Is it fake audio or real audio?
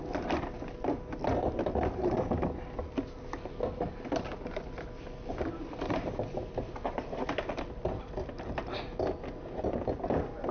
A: real